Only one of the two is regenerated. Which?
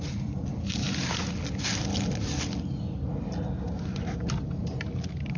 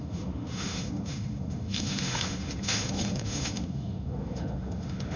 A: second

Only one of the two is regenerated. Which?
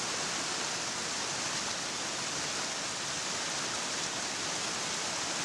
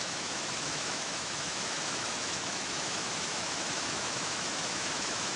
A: second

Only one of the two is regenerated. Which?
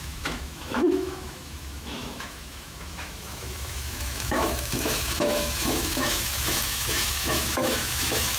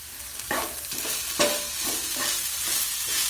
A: first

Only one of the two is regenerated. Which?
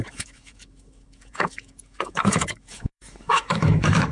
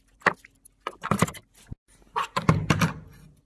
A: first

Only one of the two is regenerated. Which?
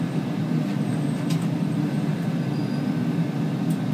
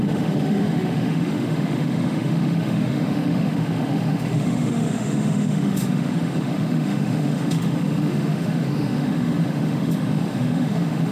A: second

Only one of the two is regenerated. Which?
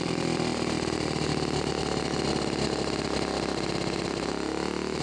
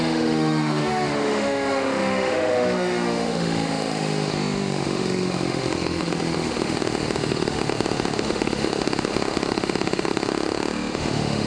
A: second